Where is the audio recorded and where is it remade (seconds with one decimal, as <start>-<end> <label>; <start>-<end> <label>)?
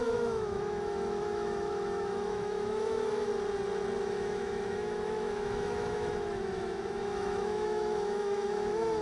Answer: 0.0-3.3 remade; 3.3-4.0 recorded; 4.0-9.0 remade